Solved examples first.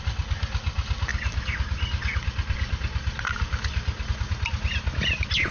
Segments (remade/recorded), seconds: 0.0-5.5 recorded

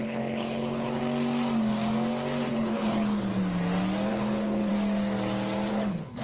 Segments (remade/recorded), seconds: 0.0-1.0 remade; 1.0-2.5 recorded; 2.5-3.3 remade; 3.3-4.1 recorded; 4.1-4.7 remade; 4.7-5.7 recorded; 5.7-6.2 remade

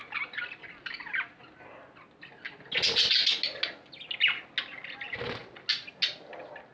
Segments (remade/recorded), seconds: 0.0-6.7 recorded